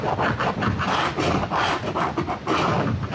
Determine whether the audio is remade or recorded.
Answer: recorded